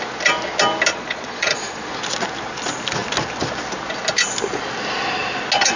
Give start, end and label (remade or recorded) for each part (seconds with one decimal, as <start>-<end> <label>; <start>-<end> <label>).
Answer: 0.0-0.9 recorded; 0.9-1.9 remade; 1.9-5.8 recorded